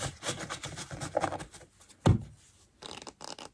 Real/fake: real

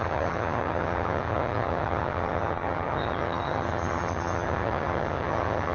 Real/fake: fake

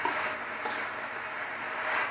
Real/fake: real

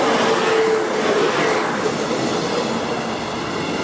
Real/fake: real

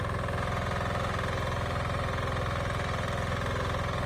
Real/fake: real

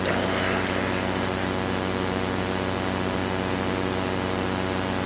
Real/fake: real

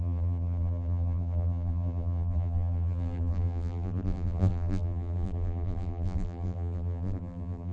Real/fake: fake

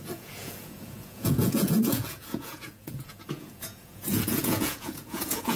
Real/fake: fake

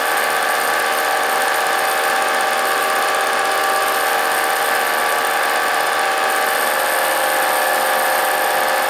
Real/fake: real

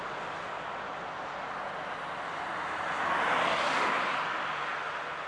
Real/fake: real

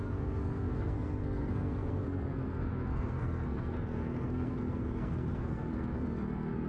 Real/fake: fake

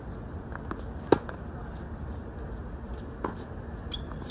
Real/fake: real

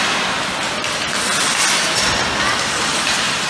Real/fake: real